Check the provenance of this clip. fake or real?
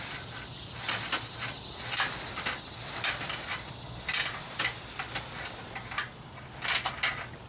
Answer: real